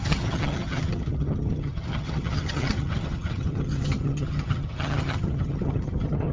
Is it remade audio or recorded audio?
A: remade